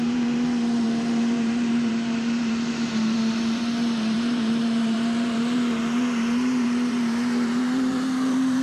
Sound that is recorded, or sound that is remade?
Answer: remade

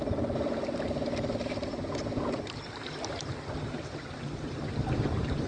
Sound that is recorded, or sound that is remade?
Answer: remade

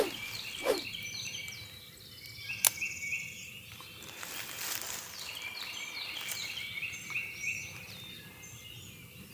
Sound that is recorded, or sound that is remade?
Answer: recorded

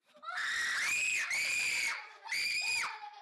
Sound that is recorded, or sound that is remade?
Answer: remade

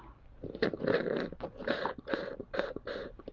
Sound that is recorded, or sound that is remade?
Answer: remade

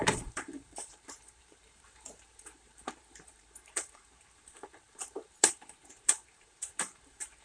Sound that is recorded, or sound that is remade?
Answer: remade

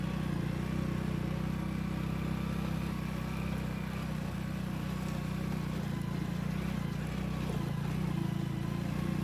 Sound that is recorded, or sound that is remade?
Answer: recorded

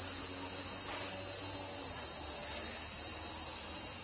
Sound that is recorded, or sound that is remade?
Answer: recorded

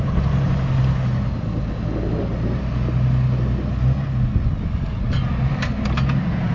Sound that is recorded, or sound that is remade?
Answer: recorded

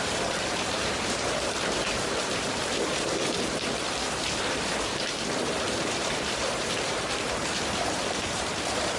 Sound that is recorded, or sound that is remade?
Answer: remade